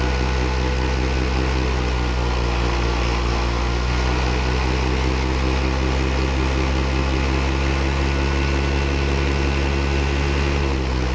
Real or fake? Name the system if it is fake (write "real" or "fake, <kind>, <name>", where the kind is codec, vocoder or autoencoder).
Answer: real